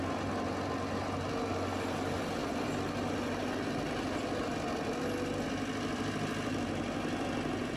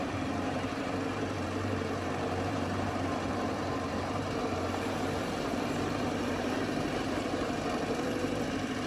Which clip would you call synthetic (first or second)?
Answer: second